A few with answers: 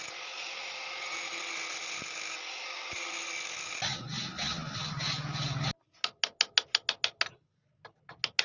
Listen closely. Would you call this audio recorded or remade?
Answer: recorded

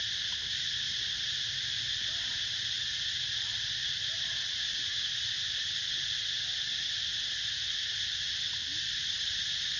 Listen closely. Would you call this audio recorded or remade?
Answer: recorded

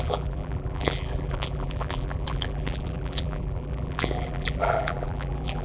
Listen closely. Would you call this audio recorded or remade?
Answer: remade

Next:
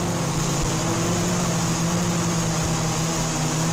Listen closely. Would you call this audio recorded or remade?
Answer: recorded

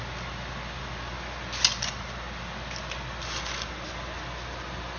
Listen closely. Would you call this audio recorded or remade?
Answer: recorded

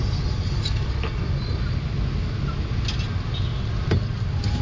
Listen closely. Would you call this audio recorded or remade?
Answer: recorded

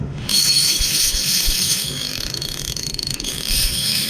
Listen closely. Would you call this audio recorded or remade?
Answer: remade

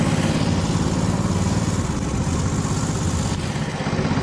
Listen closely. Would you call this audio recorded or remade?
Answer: recorded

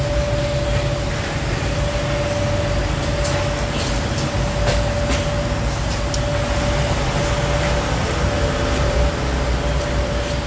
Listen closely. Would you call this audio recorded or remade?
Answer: recorded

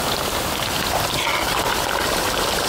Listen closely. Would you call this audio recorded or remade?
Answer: remade